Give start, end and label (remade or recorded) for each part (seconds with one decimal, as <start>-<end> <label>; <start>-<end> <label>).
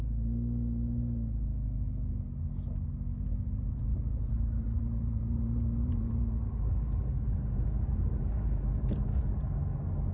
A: 0.0-3.9 recorded; 3.9-9.1 remade; 9.1-10.1 recorded